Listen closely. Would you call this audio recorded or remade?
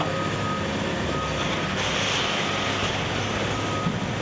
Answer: recorded